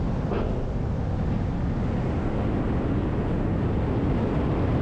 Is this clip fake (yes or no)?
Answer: no